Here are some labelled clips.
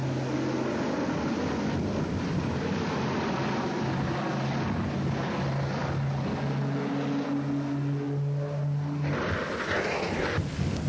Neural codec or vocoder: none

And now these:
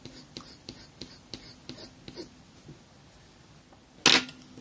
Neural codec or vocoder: none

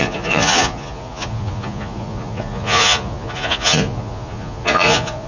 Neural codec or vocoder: vocoder, Vocos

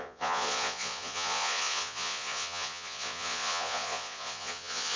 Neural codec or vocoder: vocoder, Vocos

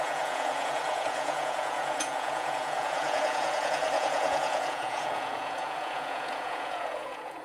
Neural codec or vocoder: vocoder, Vocos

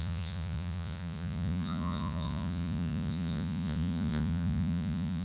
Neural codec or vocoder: vocoder, Vocos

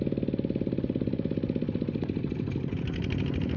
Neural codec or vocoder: none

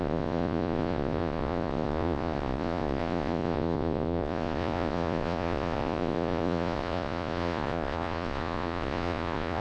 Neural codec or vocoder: vocoder, Vocos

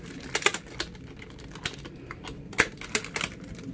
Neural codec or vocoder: none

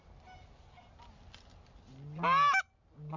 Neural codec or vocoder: none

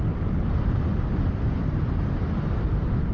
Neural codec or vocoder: none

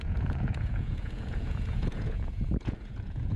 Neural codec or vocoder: vocoder, Vocos